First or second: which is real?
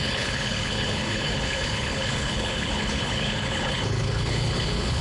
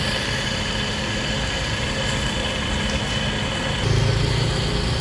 second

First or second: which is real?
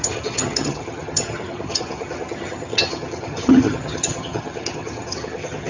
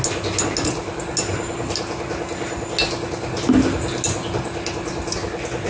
second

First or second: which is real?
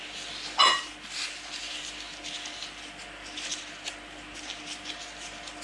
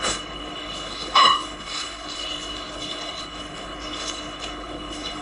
first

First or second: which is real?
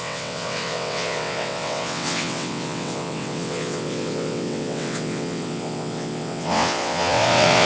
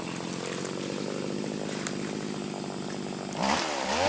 second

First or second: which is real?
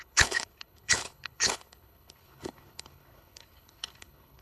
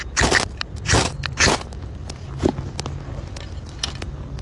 second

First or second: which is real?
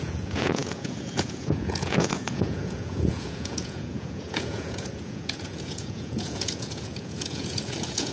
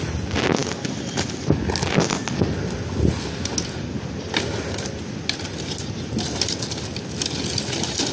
second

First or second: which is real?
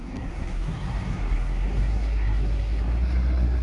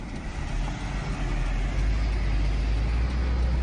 second